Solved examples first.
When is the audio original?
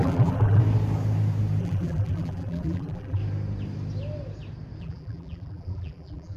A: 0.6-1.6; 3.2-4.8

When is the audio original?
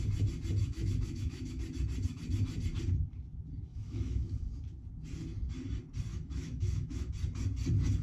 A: 0.0-0.6; 1.6-3.7; 4.5-6.1; 7.1-8.0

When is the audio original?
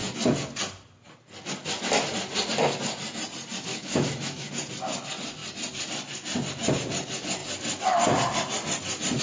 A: 0.0-3.7; 4.5-9.2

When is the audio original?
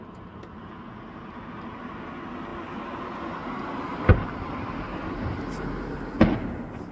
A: 0.0-3.9; 4.4-6.9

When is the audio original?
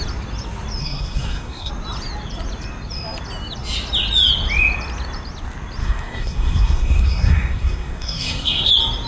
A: 0.0-0.8; 1.7-5.8; 8.7-9.1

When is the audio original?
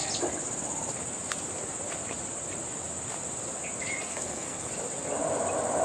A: 0.0-4.1; 4.7-5.8